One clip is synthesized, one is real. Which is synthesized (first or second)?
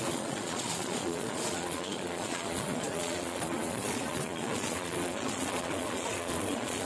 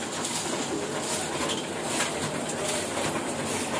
first